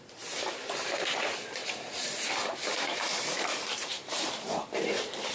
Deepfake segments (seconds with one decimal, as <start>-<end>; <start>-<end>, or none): 0.0-5.3